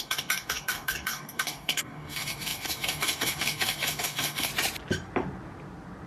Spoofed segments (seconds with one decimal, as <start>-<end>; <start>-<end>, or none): 0.0-4.5